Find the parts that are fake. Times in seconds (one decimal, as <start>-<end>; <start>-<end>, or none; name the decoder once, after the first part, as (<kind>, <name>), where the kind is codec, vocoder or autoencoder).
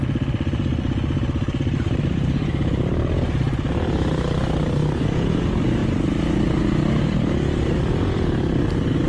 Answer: none